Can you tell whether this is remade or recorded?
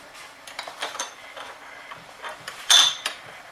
remade